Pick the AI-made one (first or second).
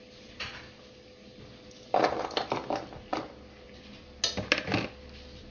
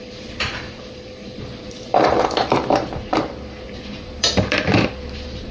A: second